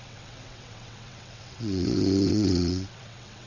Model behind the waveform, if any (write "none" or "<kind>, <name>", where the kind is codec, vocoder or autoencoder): vocoder, WaveNeXt